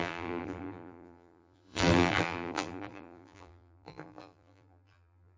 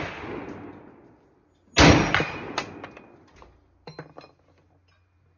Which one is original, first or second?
second